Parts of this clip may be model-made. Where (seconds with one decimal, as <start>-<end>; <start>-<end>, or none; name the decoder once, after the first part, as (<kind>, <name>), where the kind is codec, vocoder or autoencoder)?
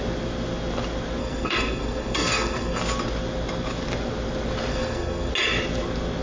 1.2-2.8 (codec, SNAC); 4.7-5.3